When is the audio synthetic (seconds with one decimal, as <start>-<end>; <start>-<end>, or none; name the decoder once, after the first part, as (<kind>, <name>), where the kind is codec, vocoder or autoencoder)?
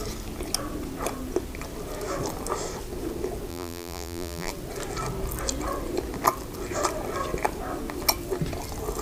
3.5-4.5 (vocoder, BigVGAN v2)